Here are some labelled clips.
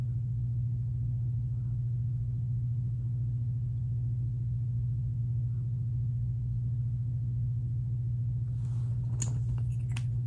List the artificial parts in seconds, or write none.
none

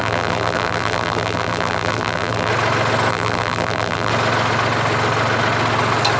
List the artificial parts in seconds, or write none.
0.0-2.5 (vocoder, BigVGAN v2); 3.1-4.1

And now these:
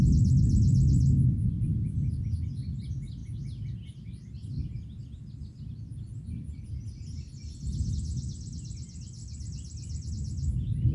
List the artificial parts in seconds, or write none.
none

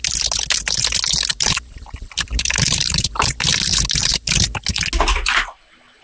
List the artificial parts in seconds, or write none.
1.3-3.2 (vocoder, BigVGAN v2); 4.0-4.8